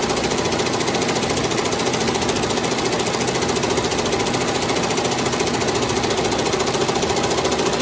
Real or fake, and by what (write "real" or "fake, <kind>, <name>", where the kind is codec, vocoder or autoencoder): real